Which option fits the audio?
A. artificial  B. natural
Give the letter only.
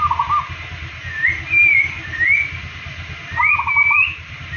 B